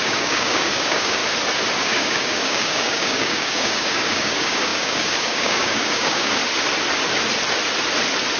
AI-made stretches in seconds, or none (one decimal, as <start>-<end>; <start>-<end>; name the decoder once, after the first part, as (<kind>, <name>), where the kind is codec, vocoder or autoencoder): 0.0-1.2 (codec, DAC); 1.8-6.4